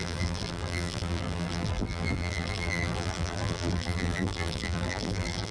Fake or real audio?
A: fake